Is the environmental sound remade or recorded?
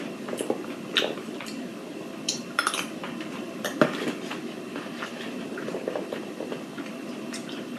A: remade